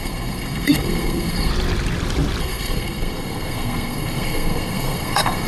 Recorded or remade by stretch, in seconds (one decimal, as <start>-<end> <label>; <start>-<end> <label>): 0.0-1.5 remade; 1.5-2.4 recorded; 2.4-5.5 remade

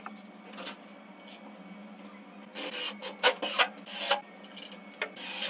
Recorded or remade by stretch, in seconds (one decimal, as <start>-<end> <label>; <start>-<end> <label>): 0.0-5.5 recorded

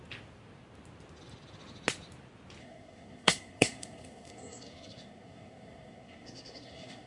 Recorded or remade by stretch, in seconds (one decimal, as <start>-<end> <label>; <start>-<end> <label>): 0.0-2.6 recorded; 2.6-7.1 remade